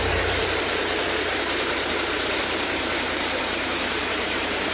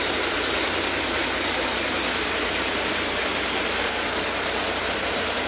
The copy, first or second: first